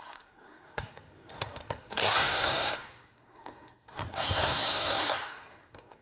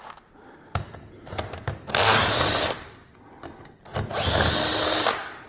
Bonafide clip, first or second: second